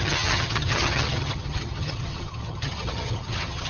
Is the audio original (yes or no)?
no